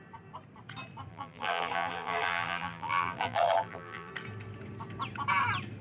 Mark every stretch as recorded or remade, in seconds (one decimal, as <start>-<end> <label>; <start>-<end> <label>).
0.0-1.1 recorded; 1.1-4.1 remade; 4.1-5.8 recorded